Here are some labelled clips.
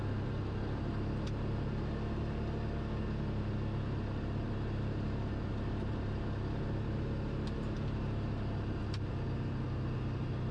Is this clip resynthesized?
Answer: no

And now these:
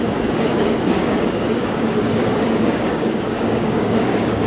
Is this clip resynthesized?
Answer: yes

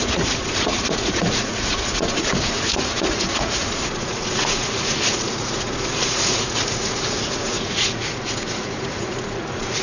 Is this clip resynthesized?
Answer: yes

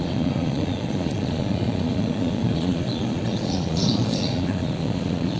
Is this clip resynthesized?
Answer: yes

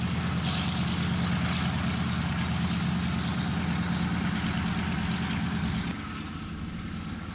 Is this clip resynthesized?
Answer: no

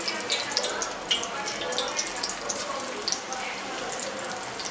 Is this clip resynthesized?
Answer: no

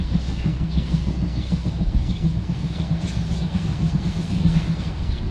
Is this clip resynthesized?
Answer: yes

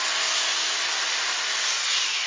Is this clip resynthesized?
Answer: no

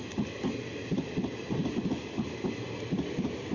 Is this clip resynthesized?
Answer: no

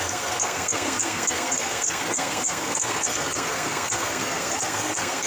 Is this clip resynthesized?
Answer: yes